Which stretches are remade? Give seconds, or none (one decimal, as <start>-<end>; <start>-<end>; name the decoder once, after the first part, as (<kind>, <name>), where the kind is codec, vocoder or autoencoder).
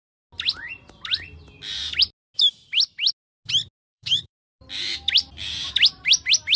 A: 3.9-4.6 (codec, DAC)